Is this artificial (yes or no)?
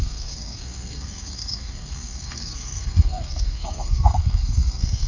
yes